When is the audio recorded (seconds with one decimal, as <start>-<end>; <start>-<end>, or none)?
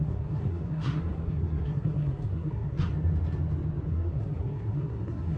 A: 2.9-3.9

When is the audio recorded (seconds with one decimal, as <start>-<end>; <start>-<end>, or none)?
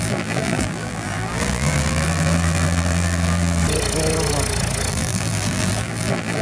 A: 3.6-4.9